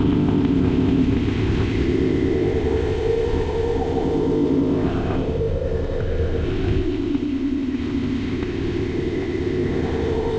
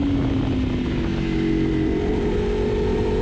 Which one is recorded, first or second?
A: second